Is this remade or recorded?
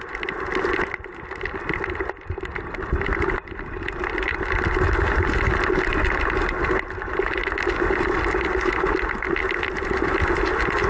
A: recorded